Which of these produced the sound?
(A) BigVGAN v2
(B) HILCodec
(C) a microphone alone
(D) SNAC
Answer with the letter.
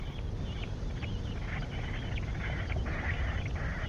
C